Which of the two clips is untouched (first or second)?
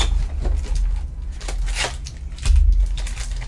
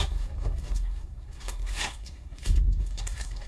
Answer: first